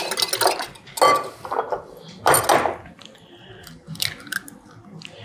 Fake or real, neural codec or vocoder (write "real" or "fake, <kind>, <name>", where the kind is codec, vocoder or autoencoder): real